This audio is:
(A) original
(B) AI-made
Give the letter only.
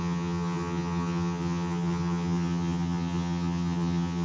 B